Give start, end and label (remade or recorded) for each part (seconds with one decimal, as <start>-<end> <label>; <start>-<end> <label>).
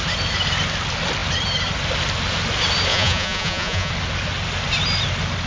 0.0-2.9 recorded; 2.9-3.9 remade; 3.9-5.5 recorded